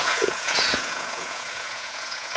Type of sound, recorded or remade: remade